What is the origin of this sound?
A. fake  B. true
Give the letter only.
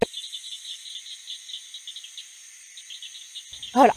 B